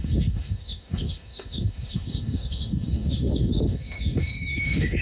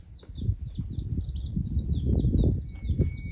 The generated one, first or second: first